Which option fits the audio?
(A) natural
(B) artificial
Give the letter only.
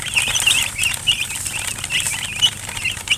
B